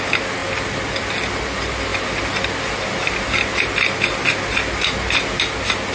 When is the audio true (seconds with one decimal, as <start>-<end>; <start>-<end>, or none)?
0.0-5.9